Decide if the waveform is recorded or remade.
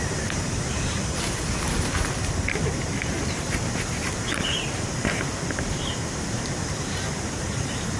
remade